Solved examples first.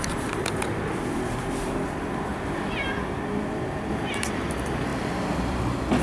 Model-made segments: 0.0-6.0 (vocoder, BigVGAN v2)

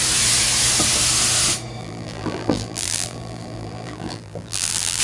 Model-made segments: 1.8-5.0 (vocoder, BigVGAN v2)

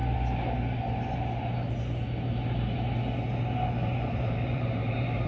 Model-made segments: 3.8-5.3 (vocoder, BigVGAN v2)

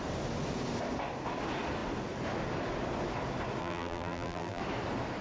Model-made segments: 3.6-4.6 (vocoder, BigVGAN v2)